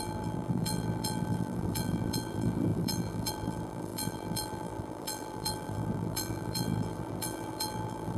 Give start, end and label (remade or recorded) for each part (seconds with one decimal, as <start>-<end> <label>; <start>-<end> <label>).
0.0-8.2 remade